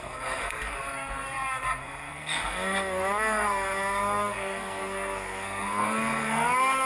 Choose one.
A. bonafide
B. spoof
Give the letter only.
B